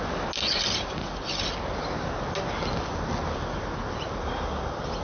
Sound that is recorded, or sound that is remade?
recorded